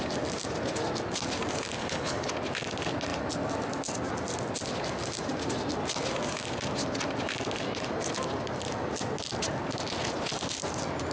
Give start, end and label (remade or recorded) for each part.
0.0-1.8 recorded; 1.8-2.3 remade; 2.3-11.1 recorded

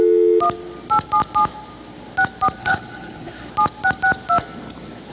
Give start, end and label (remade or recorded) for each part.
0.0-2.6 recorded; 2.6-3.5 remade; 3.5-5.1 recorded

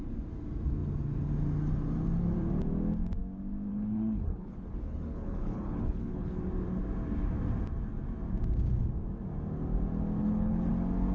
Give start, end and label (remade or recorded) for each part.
0.0-3.7 recorded; 3.7-6.4 remade; 6.4-10.2 recorded; 10.2-10.7 remade; 10.7-11.1 recorded